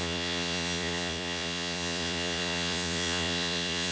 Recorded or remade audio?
remade